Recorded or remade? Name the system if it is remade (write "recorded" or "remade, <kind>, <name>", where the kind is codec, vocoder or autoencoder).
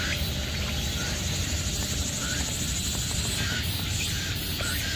recorded